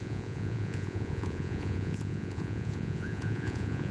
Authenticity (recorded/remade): remade